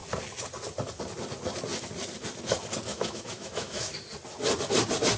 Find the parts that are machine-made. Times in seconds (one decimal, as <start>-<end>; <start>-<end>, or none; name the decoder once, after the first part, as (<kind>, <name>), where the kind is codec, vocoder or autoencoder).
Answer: 2.9-3.9 (autoencoder, DAC-VAE)

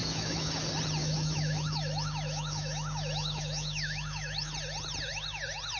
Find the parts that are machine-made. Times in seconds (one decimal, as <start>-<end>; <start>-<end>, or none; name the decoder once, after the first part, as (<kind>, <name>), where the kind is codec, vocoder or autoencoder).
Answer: 0.0-0.5 (autoencoder, DAC-VAE); 1.0-4.5

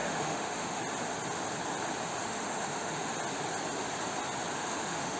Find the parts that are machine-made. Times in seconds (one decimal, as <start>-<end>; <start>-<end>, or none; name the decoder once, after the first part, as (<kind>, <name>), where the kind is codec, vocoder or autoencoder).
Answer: 0.0-0.8 (autoencoder, DAC-VAE); 2.2-3.1; 4.6-5.2

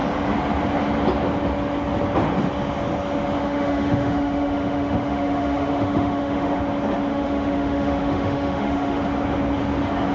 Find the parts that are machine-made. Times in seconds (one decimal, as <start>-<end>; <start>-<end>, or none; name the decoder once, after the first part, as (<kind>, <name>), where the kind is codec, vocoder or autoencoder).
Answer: 3.4-6.6 (autoencoder, DAC-VAE); 7.1-9.0

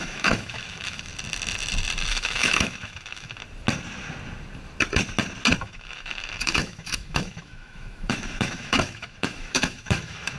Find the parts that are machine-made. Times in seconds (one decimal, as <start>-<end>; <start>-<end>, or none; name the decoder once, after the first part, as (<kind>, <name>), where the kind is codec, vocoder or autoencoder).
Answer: 0.0-1.1 (autoencoder, DAC-VAE); 2.1-3.4; 5.6-10.4